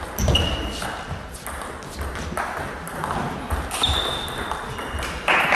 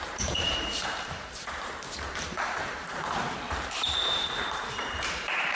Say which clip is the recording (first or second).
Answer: first